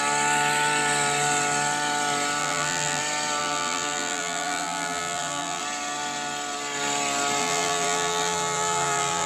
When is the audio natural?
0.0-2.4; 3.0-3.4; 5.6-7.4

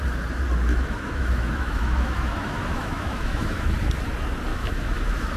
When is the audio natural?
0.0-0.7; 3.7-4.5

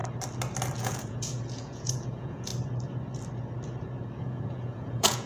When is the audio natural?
0.0-0.8; 2.5-4.2

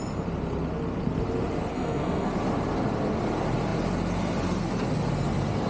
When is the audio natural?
0.0-1.7; 2.3-5.7

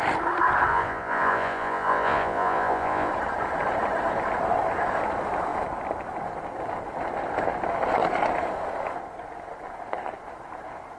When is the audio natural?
0.0-0.7; 3.1-11.0

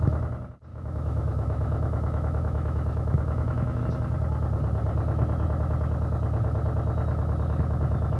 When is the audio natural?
0.0-0.7; 3.8-8.2

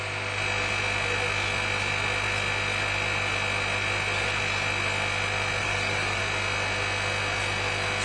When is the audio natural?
0.0-5.6; 6.2-8.0

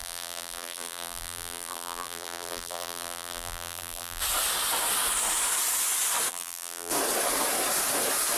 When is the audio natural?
4.2-6.3; 6.9-8.4